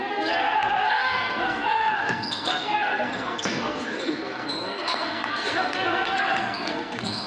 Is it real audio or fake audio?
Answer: fake